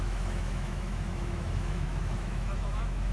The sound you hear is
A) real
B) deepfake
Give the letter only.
B